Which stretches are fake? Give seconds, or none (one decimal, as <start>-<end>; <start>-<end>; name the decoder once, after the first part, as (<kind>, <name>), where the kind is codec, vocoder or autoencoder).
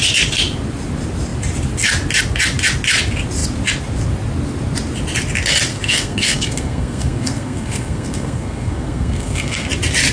5.7-9.7 (codec, SNAC)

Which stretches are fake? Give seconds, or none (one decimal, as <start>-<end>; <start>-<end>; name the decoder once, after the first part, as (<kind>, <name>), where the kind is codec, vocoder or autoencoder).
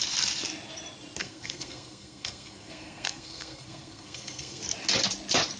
1.2-4.6 (codec, SNAC)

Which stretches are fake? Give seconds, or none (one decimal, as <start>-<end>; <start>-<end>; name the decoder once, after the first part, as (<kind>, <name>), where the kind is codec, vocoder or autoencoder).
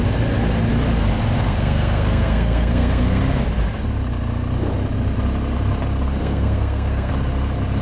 1.4-3.2 (codec, SNAC); 6.2-7.1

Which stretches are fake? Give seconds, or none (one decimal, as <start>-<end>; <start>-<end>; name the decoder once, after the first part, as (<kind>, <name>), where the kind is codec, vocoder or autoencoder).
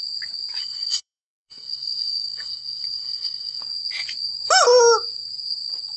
0.6-3.6 (codec, SNAC)